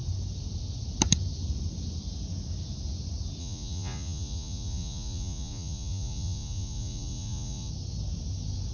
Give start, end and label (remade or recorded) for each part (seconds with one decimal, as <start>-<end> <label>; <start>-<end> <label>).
0.0-3.4 recorded; 3.4-7.7 remade; 7.7-8.7 recorded